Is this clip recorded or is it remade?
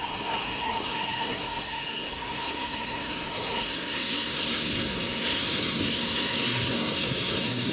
remade